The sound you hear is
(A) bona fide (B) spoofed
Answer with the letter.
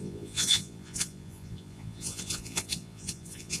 B